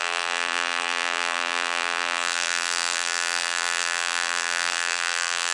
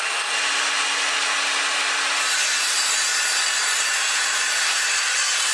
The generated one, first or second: first